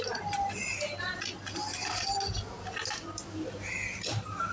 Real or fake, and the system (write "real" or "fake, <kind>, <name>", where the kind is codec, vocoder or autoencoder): real